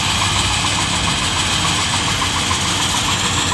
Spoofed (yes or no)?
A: no